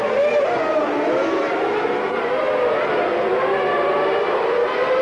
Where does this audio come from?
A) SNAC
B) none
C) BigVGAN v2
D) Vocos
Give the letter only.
B